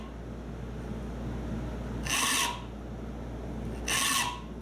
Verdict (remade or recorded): recorded